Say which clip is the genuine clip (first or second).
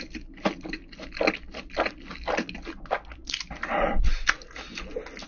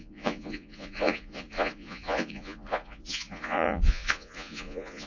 first